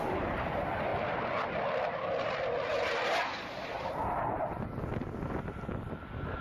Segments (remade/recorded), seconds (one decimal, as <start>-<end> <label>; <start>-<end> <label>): 0.0-6.4 recorded